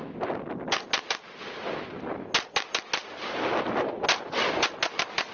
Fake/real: real